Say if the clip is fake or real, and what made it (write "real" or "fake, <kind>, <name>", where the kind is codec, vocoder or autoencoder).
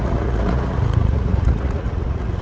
fake, vocoder, Vocos